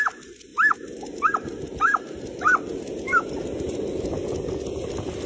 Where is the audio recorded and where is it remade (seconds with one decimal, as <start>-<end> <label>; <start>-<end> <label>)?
0.0-5.3 recorded

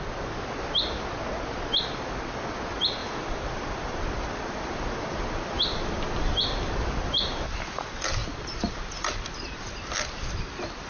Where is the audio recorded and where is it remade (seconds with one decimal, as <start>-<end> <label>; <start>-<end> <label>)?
0.0-3.0 recorded; 3.0-7.6 remade; 7.6-8.2 recorded; 8.2-9.6 remade; 9.6-10.9 recorded

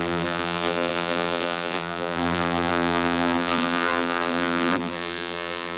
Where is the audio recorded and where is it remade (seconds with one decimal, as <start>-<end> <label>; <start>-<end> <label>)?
0.0-5.8 remade

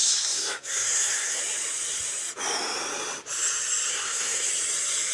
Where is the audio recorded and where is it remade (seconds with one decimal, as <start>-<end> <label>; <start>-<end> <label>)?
0.0-1.4 remade; 1.4-3.9 recorded; 3.9-4.5 remade; 4.5-5.1 recorded

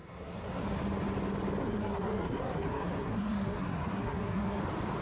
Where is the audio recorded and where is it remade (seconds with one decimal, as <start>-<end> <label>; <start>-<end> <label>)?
0.0-0.6 remade; 0.6-1.6 recorded; 1.6-4.6 remade; 4.6-5.0 recorded

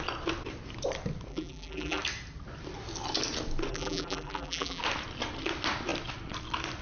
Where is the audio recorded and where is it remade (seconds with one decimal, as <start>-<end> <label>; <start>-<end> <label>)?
0.0-1.3 recorded; 1.3-2.0 remade; 2.0-3.7 recorded; 3.7-4.8 remade; 4.8-6.8 recorded